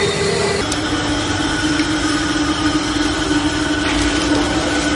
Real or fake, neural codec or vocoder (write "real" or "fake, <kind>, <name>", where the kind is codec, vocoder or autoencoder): real